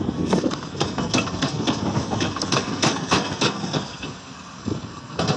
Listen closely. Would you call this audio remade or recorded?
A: remade